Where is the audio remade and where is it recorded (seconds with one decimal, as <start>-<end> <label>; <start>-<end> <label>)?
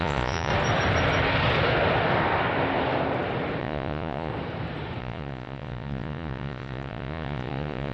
0.0-0.5 remade; 0.5-3.6 recorded; 3.6-4.3 remade; 4.3-5.0 recorded; 5.0-7.9 remade